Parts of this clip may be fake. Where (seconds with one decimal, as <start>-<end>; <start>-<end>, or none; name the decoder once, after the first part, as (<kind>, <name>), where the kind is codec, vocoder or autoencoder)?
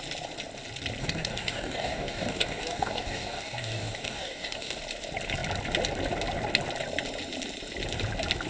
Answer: 1.0-4.8 (codec, DAC)